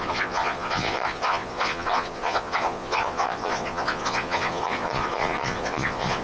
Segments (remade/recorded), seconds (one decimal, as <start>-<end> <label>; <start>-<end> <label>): 0.0-6.2 remade